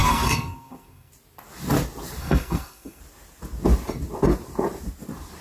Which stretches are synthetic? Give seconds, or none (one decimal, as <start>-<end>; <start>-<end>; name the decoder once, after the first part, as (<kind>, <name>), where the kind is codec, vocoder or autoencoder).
0.0-1.1 (codec, SNAC); 2.2-3.0